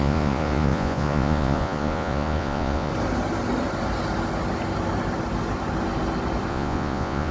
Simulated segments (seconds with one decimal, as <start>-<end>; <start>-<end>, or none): 0.0-2.9; 6.5-7.3